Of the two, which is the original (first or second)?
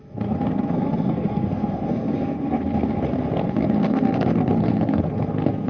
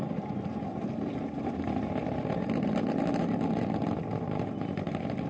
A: second